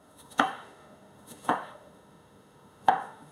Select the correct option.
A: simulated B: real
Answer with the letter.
A